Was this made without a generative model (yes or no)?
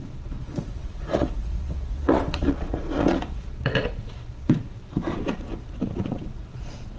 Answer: no